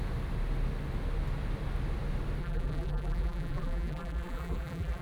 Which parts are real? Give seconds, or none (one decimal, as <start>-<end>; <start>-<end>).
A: 0.0-2.4